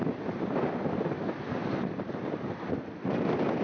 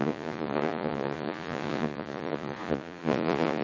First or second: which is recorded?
first